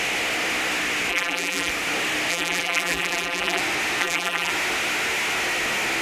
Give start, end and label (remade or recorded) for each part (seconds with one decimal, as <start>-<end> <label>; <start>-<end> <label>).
0.0-1.1 recorded; 1.1-1.7 remade; 1.7-2.3 recorded; 2.3-3.6 remade; 3.6-4.0 recorded; 4.0-4.5 remade; 4.5-6.0 recorded